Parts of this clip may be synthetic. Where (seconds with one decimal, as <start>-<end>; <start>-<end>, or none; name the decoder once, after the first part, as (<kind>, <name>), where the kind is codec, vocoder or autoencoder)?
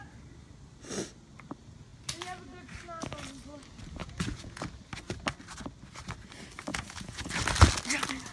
4.0-4.6 (vocoder, Vocos); 6.7-7.3